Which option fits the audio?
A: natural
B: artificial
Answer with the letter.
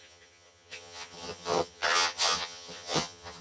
B